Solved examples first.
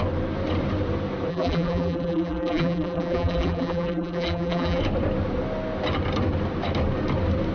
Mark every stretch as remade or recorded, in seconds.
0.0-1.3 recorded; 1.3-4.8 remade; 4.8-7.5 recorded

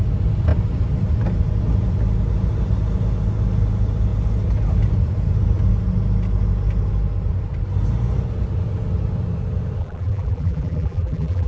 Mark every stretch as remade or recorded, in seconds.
0.0-9.8 recorded; 9.8-11.5 remade

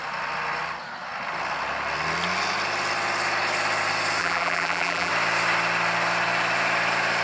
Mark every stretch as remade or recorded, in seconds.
0.0-4.2 recorded; 4.2-5.1 remade; 5.1-7.2 recorded

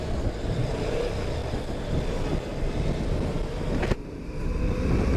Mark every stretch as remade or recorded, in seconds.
0.0-1.4 recorded; 1.4-4.4 remade; 4.4-5.2 recorded

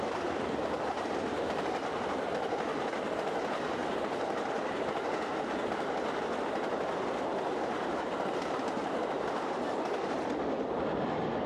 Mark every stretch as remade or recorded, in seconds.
0.0-11.5 recorded

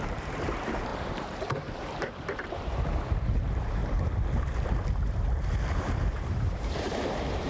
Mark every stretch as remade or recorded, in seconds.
0.0-3.8 remade; 3.8-5.8 recorded; 5.8-7.5 remade